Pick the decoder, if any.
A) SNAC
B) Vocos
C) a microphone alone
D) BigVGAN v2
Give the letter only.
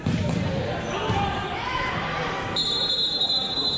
D